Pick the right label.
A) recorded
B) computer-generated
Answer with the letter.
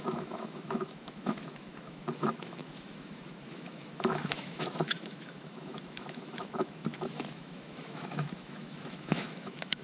B